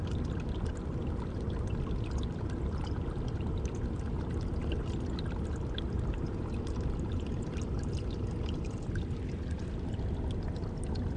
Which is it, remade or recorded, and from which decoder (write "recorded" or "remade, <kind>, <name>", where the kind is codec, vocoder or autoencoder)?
recorded